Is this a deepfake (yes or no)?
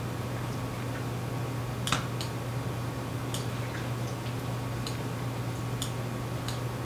no